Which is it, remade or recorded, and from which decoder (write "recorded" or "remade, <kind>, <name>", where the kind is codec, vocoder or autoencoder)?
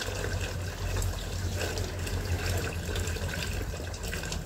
recorded